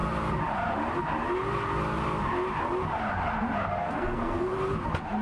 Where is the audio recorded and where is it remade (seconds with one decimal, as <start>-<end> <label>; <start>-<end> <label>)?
0.0-3.8 recorded; 3.8-4.5 remade; 4.5-5.2 recorded